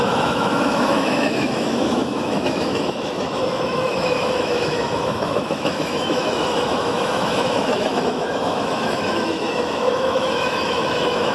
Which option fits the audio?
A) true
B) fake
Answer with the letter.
B